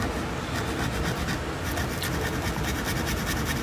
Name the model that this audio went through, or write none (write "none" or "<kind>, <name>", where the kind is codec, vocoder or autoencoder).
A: none